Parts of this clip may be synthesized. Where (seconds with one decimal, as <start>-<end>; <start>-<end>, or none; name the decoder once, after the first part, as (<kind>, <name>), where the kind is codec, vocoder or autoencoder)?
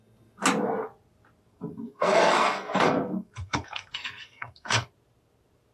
1.5-4.9 (codec, SNAC)